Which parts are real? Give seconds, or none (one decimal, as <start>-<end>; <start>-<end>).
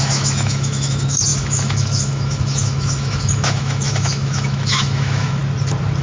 5.4-6.0